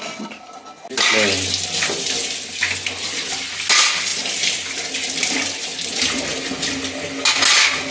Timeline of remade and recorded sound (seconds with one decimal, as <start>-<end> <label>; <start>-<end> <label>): 0.0-7.9 recorded